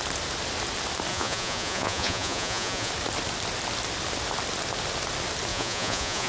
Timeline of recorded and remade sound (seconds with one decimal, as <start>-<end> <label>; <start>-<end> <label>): 0.0-1.1 recorded; 1.1-2.9 remade; 2.9-5.5 recorded; 5.5-6.3 remade